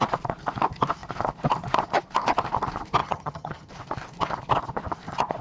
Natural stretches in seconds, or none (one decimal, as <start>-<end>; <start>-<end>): 0.0-3.0; 3.7-5.4